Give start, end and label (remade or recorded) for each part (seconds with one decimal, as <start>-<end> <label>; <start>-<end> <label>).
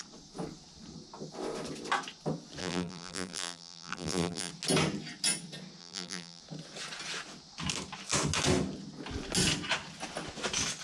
0.0-2.6 recorded; 2.6-4.5 remade; 4.5-5.8 recorded; 5.8-6.4 remade; 6.4-10.8 recorded